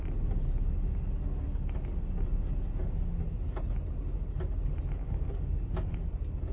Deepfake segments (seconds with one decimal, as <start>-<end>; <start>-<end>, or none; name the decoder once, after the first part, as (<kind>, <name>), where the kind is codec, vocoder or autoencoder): 5.0-5.9 (codec, DAC)